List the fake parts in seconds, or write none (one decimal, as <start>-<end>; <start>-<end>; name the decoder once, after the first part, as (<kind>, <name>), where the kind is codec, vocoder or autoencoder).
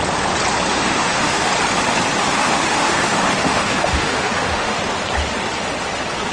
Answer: 0.7-1.5 (autoencoder, DAC-VAE); 2.2-4.8